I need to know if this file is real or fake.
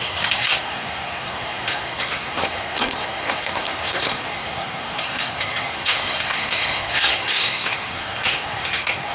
fake